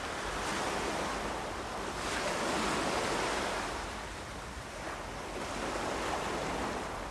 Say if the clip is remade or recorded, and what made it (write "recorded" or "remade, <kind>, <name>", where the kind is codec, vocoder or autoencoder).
recorded